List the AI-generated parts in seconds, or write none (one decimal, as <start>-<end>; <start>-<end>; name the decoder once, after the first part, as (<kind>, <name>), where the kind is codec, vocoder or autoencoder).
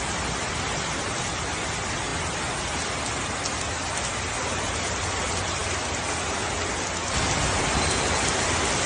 none